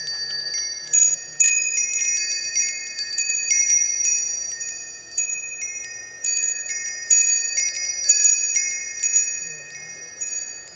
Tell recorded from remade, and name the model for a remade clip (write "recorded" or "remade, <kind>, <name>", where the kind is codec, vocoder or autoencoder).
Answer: remade, vocoder, BigVGAN v2